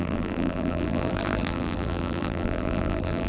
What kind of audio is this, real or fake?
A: fake